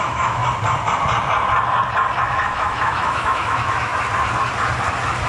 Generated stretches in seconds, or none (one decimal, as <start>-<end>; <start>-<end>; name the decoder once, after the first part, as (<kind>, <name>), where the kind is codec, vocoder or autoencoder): 0.0-0.4 (autoencoder, DAC-VAE); 2.2-3.9